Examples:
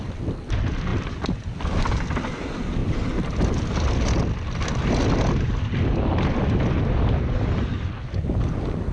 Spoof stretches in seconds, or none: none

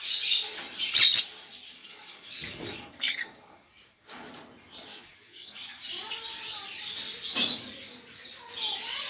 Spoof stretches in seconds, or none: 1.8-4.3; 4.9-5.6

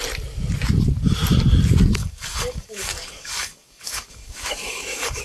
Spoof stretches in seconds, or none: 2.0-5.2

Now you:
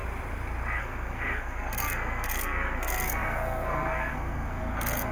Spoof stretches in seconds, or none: 0.8-5.1

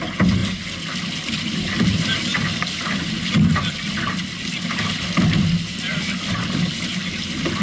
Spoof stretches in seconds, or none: none